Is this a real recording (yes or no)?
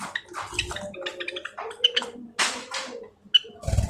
yes